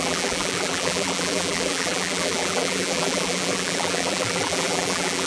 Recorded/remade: remade